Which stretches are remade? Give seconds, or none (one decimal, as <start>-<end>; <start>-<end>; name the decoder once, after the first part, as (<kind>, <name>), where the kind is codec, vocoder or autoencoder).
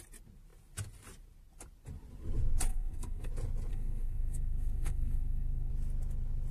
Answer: 2.7-3.3 (codec, SNAC); 3.7-5.7